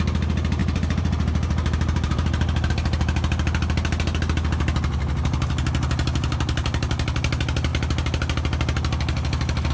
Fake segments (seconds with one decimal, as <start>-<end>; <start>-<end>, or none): 0.6-2.7